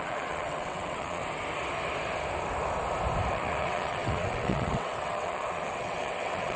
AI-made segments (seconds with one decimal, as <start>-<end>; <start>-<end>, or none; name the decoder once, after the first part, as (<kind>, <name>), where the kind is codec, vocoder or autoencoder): 0.0-1.2 (vocoder, WaveNeXt); 3.3-6.6